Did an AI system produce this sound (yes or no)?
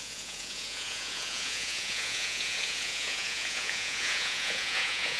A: yes